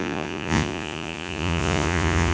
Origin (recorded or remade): remade